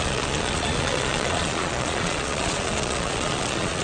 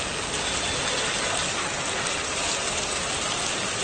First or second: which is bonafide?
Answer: second